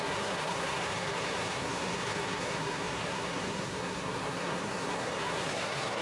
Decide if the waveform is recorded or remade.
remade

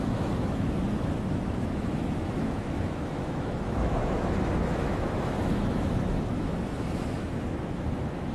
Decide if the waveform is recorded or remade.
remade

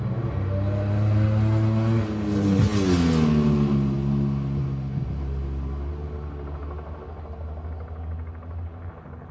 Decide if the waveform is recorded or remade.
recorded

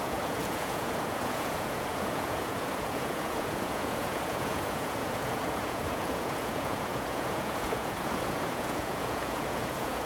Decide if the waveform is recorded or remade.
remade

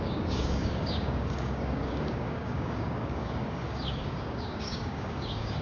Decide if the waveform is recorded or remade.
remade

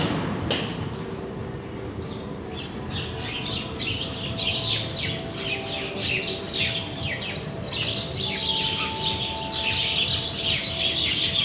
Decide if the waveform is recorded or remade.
recorded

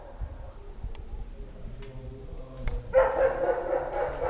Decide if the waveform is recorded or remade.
recorded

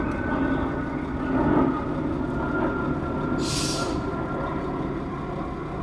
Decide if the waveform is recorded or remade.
recorded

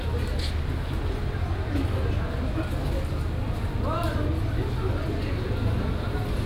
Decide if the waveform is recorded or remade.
recorded